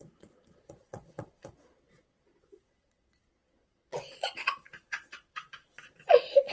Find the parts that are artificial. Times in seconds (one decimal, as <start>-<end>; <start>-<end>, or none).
0.0-6.5